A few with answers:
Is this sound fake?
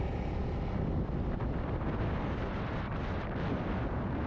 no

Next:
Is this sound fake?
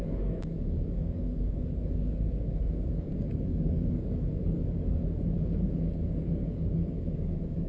yes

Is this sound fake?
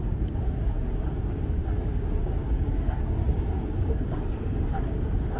yes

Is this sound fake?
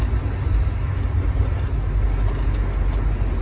no